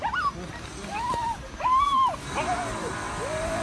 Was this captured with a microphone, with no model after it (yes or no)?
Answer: yes